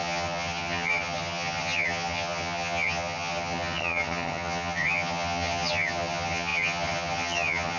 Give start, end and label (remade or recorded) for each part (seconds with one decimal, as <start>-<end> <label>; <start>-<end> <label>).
0.0-7.8 remade